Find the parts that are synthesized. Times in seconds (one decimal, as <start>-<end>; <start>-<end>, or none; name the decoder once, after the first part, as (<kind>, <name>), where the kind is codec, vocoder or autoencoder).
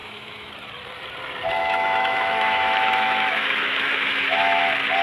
0.0-0.5 (autoencoder, DAC-VAE); 1.6-4.6